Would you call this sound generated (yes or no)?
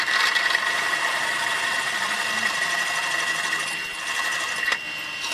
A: no